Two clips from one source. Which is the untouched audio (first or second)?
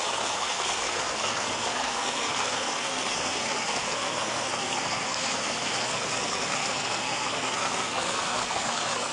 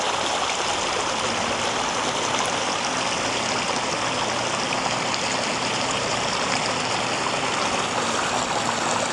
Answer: second